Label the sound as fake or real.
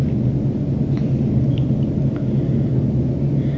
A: real